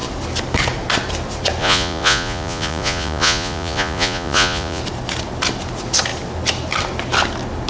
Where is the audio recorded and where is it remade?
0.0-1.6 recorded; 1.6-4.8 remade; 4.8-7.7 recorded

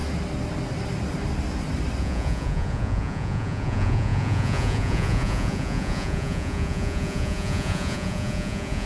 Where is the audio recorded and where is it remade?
0.0-2.0 recorded; 2.0-8.9 remade

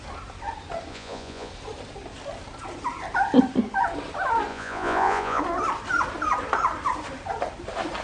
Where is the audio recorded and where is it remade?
0.0-0.9 recorded; 0.9-1.5 remade; 1.5-4.5 recorded; 4.5-5.4 remade; 5.4-8.0 recorded

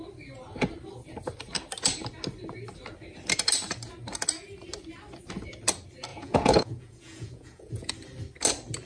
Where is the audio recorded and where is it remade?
0.0-6.1 recorded; 6.1-7.9 remade; 7.9-8.9 recorded